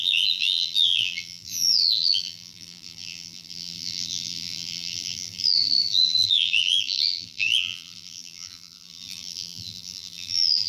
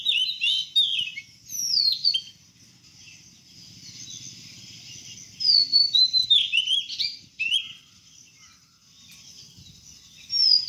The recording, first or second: second